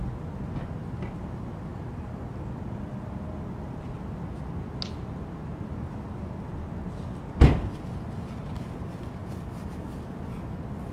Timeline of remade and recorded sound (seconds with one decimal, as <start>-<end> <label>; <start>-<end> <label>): 0.0-1.7 recorded; 1.7-3.3 remade; 3.3-9.2 recorded; 9.2-10.0 remade; 10.0-10.9 recorded